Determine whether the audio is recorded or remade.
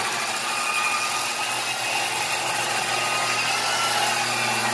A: recorded